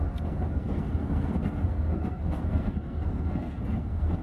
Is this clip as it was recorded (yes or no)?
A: no